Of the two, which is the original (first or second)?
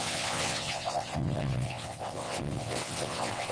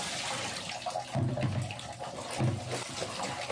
second